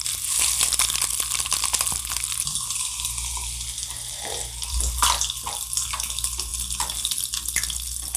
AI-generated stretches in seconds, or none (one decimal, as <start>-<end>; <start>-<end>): none